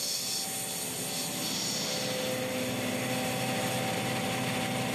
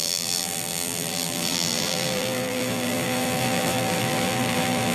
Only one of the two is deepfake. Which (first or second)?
second